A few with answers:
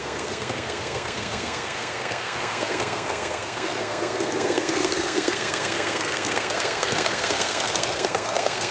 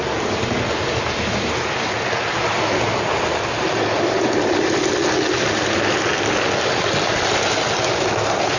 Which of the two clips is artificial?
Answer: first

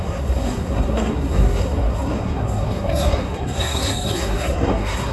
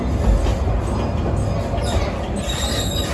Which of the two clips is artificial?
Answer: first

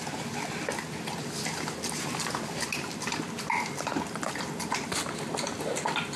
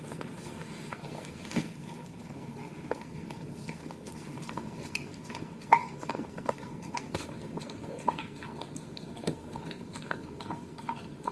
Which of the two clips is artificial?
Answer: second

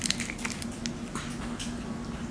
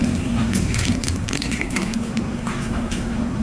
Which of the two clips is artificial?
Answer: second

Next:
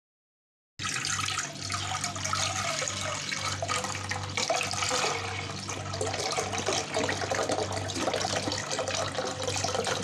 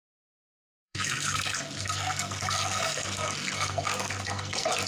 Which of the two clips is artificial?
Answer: second